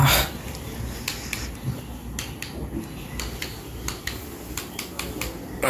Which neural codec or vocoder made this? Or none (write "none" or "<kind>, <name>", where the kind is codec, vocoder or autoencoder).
none